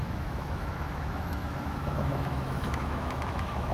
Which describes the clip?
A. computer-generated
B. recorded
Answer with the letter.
A